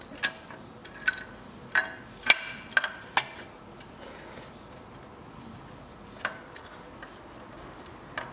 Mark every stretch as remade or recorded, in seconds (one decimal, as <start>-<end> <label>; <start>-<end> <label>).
0.0-8.3 recorded